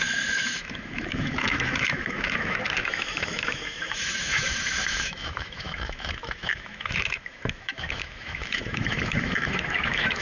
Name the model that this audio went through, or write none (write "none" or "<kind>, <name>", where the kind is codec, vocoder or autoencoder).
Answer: autoencoder, DAC-VAE